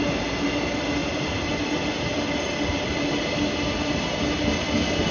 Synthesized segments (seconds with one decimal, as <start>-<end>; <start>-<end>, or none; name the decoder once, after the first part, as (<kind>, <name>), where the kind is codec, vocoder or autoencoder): 1.0-3.2 (vocoder, BigVGAN v2)